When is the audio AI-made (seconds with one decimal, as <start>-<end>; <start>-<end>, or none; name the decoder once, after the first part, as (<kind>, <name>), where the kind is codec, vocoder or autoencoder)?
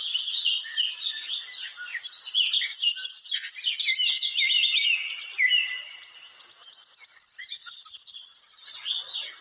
none